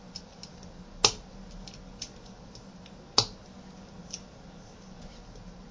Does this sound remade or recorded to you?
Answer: recorded